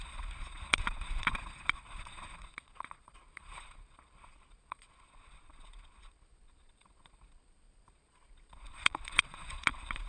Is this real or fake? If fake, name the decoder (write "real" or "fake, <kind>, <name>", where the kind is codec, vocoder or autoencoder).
fake, vocoder, Vocos